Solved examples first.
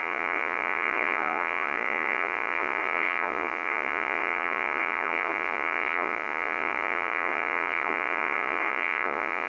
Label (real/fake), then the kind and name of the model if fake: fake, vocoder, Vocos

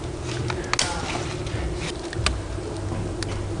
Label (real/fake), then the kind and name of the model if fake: real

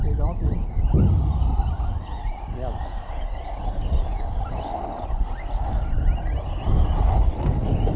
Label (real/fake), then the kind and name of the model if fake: real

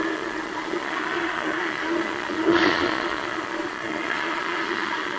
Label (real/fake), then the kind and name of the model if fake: fake, vocoder, Vocos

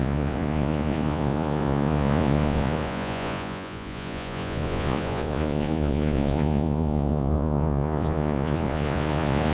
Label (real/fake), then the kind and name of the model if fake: fake, vocoder, Vocos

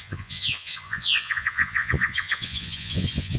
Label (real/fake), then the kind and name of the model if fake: fake, vocoder, Vocos